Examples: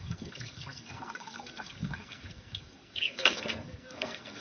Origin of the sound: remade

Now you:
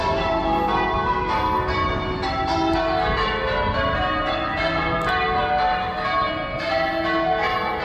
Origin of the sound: recorded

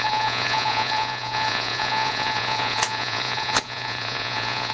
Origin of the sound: remade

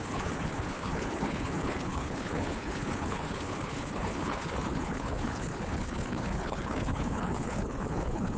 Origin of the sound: remade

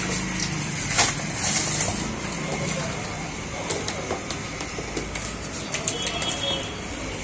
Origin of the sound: recorded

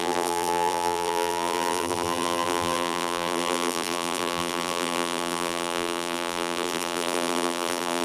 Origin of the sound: remade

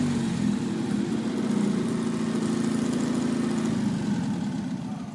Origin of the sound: recorded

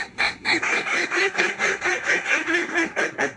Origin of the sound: remade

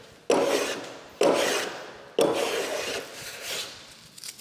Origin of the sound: recorded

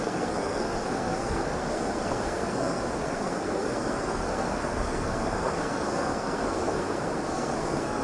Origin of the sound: remade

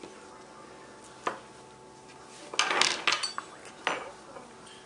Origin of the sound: recorded